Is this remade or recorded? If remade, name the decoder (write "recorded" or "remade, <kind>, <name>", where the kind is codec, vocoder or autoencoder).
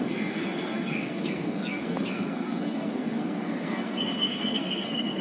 remade, codec, SNAC